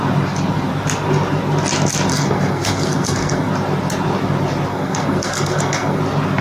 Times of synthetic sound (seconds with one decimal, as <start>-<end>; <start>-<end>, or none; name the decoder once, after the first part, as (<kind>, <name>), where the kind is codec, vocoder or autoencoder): 2.1-3.5 (codec, SNAC); 4.7-6.0